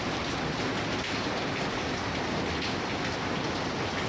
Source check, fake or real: real